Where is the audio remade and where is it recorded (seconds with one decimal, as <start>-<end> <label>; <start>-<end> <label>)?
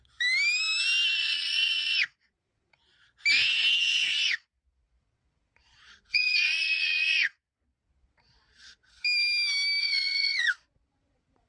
0.0-1.2 recorded; 1.2-2.8 remade; 2.8-3.8 recorded; 3.8-9.0 remade; 9.0-9.8 recorded; 9.8-11.5 remade